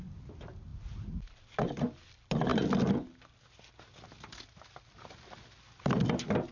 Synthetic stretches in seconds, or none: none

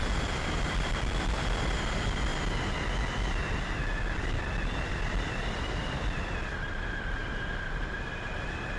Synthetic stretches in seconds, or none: 0.0-2.3 (vocoder, BigVGAN v2); 4.2-8.8

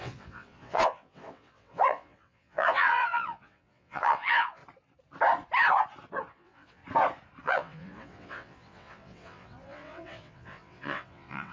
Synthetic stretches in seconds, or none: 0.0-4.6 (vocoder, WaveNeXt); 6.3-6.8; 7.4-11.5

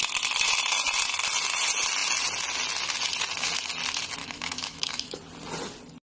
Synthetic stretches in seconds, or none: 4.2-5.2 (autoencoder, DAC-VAE)

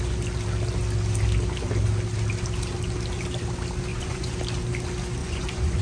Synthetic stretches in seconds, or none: 3.9-4.4 (vocoder, Vocos); 5.2-5.8